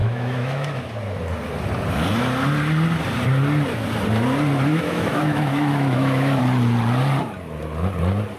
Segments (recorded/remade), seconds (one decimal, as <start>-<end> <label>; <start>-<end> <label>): 0.0-0.9 remade; 0.9-4.7 recorded; 4.7-6.4 remade; 6.4-8.4 recorded